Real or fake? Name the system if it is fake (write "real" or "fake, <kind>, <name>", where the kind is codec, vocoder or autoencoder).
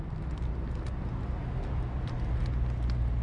real